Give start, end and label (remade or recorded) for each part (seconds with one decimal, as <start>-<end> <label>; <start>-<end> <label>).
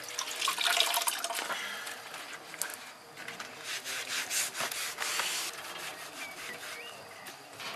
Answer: 0.0-7.8 recorded